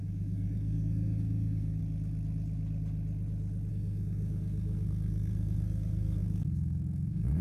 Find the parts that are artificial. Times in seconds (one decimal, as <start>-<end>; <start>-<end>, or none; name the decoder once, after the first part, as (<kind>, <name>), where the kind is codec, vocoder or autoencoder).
0.0-1.8 (codec, SNAC); 3.7-7.4

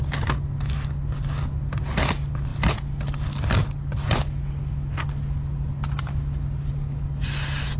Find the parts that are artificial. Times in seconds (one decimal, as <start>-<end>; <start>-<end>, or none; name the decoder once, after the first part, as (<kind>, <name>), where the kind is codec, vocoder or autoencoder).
none

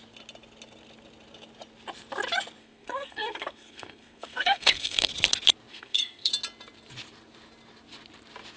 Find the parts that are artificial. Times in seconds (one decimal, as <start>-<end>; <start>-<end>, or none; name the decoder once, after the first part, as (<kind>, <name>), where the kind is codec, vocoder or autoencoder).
2.6-5.1 (codec, SNAC); 5.7-6.3